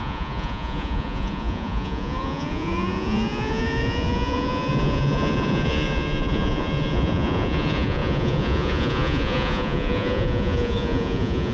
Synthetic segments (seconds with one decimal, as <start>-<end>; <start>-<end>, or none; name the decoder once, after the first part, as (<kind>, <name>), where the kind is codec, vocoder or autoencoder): 0.0-11.5 (vocoder, Vocos)